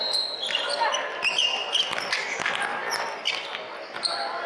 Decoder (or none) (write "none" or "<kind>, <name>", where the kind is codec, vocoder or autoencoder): none